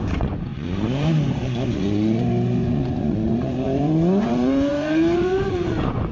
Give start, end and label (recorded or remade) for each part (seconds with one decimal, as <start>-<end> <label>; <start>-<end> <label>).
0.0-6.1 remade